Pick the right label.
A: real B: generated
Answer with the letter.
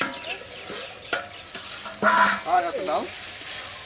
A